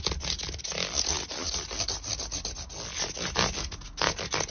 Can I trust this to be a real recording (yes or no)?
yes